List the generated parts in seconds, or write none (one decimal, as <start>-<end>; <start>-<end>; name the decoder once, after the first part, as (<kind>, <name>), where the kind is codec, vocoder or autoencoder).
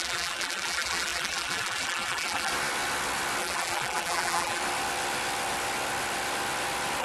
0.0-2.5 (vocoder, BigVGAN v2); 3.4-4.6